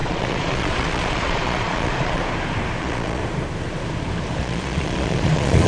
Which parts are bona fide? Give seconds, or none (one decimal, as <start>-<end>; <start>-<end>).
2.2-2.8; 3.2-4.4